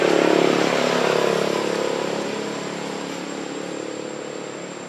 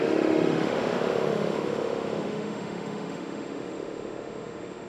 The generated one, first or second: second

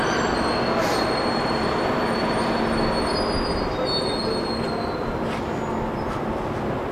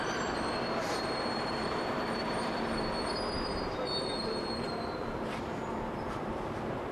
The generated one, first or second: second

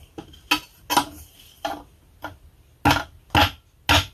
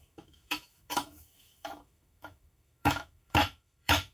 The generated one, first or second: second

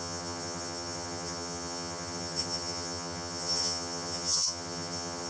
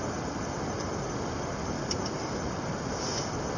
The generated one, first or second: first